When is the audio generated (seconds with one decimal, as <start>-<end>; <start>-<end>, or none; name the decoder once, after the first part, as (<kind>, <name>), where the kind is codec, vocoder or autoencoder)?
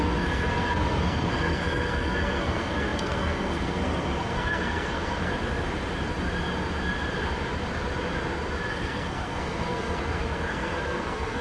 0.0-5.3 (codec, SNAC); 8.7-11.4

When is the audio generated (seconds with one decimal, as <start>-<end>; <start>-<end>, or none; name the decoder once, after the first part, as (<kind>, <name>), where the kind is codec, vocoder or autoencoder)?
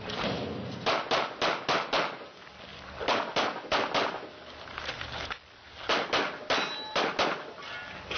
none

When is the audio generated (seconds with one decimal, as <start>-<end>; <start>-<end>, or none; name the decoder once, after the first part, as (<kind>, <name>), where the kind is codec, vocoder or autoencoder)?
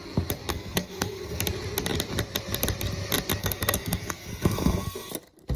0.5-1.4 (codec, SNAC); 3.4-5.1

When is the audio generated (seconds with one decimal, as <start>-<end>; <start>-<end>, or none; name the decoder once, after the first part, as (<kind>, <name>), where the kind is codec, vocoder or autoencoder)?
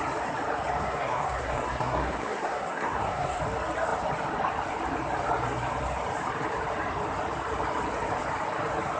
0.8-3.4 (codec, SNAC)